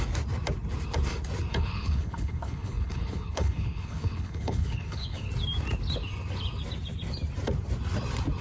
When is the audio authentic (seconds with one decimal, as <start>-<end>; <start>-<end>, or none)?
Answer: 0.0-1.5; 5.3-8.4